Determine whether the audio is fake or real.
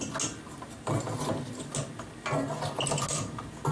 real